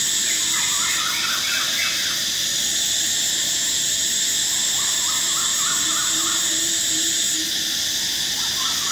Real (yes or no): yes